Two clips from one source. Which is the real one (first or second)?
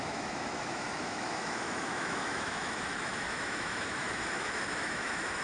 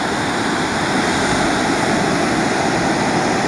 second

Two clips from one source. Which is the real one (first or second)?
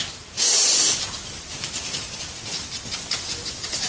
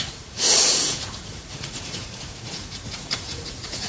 first